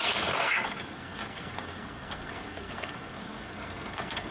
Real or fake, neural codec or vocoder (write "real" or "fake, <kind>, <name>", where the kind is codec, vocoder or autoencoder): fake, codec, SNAC